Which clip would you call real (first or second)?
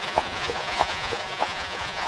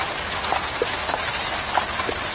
second